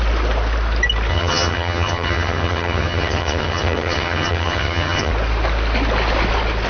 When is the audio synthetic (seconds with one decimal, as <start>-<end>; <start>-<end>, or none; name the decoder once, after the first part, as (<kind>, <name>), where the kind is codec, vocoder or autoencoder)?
1.1-5.1 (vocoder, HiFi-GAN)